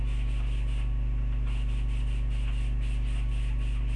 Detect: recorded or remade recorded